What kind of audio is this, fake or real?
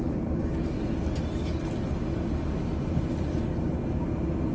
real